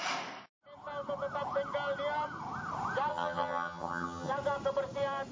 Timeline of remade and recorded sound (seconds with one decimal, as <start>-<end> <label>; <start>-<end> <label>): 0.0-3.1 recorded; 3.1-4.3 remade; 4.3-5.3 recorded